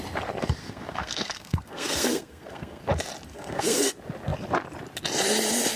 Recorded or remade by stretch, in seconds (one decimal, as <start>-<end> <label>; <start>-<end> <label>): 0.0-0.6 recorded; 0.6-2.8 remade; 2.8-3.3 recorded; 3.3-3.9 remade; 3.9-5.8 recorded